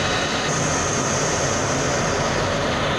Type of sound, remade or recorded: recorded